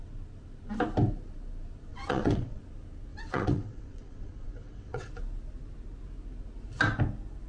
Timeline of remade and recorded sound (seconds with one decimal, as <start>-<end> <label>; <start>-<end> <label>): 0.0-1.9 recorded; 1.9-2.6 remade; 2.6-3.1 recorded; 3.1-5.1 remade; 5.1-7.5 recorded